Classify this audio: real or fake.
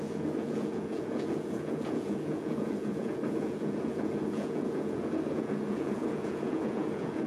fake